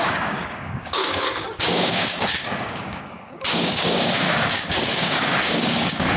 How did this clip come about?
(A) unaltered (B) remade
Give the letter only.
B